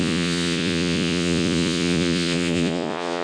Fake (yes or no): yes